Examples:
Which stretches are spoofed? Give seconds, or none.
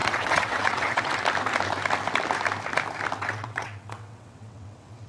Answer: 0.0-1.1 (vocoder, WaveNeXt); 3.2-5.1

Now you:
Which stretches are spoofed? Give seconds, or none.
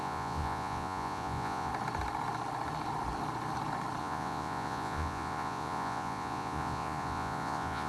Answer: 0.0-1.7 (vocoder, Vocos); 4.0-7.9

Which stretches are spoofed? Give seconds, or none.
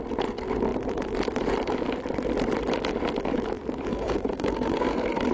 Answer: 3.9-5.3 (codec, SNAC)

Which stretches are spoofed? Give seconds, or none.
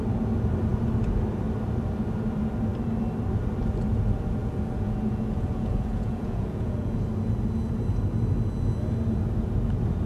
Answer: 4.4-7.0 (vocoder, Vocos)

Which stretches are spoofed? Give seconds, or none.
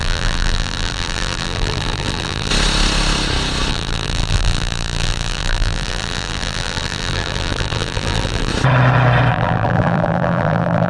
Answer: 0.0-2.5 (vocoder, BigVGAN v2); 3.7-8.5; 9.3-10.9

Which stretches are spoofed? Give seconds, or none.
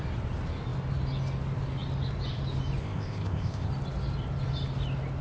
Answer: 2.8-3.7 (codec, ZipCodec)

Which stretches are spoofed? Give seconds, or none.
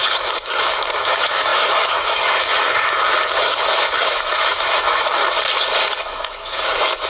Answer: 0.0-5.2 (autoencoder, DAC-VAE); 6.0-7.1